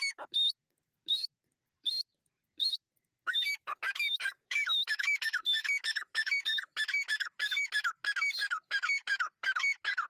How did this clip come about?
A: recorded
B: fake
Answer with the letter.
B